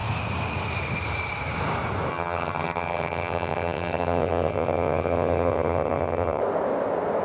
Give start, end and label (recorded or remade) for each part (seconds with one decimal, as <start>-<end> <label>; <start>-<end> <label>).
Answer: 0.0-2.1 recorded; 2.1-6.4 remade; 6.4-7.2 recorded

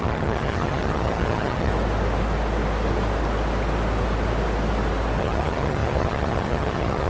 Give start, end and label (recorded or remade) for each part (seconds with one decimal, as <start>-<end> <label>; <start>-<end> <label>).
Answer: 0.0-1.7 remade; 1.7-5.2 recorded; 5.2-7.1 remade

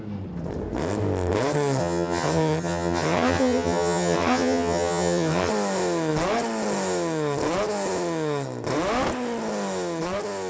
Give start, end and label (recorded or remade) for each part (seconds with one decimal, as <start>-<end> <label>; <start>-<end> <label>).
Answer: 0.0-1.8 recorded; 1.8-5.5 remade; 5.5-10.5 recorded

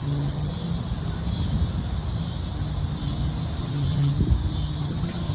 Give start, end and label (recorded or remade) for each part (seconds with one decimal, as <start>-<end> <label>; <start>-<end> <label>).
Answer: 0.0-0.5 remade; 0.5-3.6 recorded; 3.6-4.1 remade; 4.1-4.8 recorded; 4.8-5.3 remade

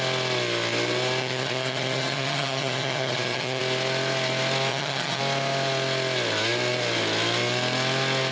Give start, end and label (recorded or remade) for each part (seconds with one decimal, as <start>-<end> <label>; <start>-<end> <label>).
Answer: 0.0-1.2 recorded; 1.2-3.6 remade; 3.6-4.7 recorded; 4.7-5.2 remade; 5.2-8.3 recorded

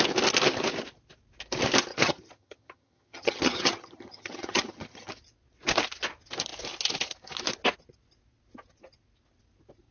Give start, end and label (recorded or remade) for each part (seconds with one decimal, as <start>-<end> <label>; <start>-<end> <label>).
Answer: 0.0-1.9 recorded; 1.9-5.1 remade; 5.1-9.9 recorded